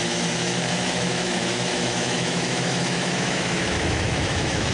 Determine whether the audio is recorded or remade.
remade